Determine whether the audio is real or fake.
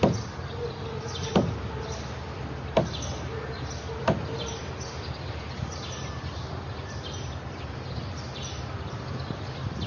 real